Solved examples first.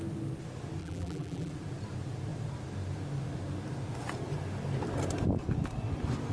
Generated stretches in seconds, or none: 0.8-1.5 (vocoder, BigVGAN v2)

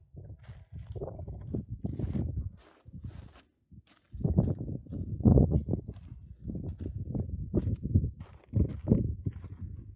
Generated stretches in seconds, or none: 5.1-5.6 (vocoder, Vocos)

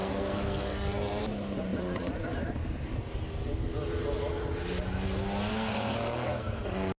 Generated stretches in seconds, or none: 0.0-1.2 (codec, SNAC); 5.5-6.6

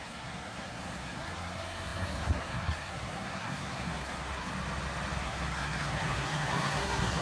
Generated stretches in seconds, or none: 0.0-4.5 (codec, SNAC); 5.2-7.2

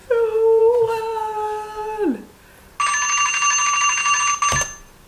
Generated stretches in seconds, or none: none

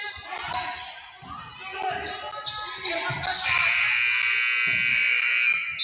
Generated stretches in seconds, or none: 4.9-5.8 (autoencoder, DAC-VAE)

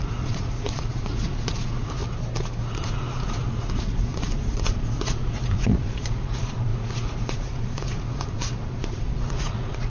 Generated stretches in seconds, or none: 0.0-2.0 (vocoder, Vocos); 2.7-9.9